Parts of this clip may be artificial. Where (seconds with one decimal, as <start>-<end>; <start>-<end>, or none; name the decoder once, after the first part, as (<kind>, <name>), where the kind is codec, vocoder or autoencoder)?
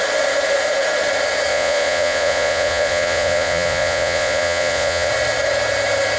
1.5-5.1 (vocoder, Vocos)